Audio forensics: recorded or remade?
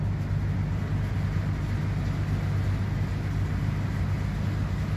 recorded